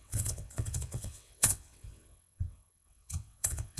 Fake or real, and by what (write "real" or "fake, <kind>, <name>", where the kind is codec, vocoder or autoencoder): fake, vocoder, WaveNeXt